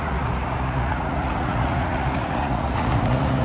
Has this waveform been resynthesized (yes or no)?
yes